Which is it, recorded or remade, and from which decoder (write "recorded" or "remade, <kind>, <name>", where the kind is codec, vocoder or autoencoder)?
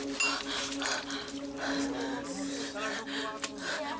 recorded